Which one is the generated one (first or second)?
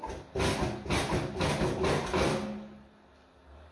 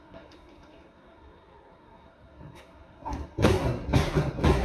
second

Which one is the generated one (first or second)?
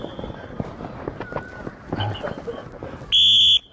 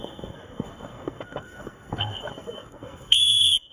second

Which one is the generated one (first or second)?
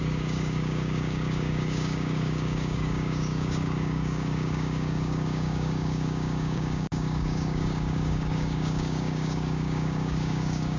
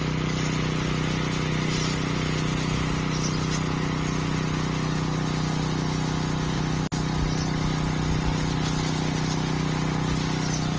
first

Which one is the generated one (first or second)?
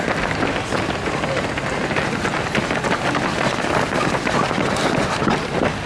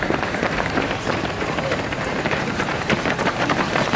second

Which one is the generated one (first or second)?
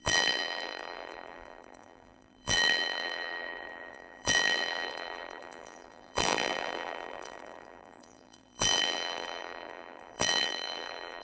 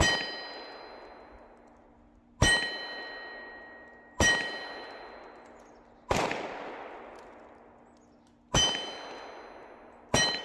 first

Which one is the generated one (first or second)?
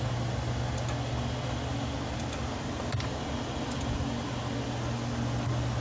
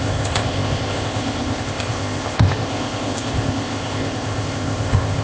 second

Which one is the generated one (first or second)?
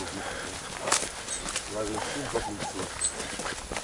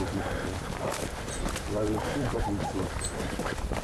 second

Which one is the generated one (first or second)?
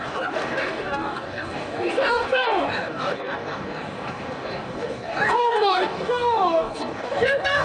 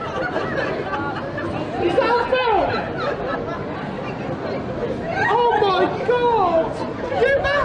first